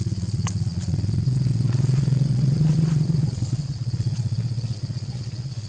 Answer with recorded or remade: remade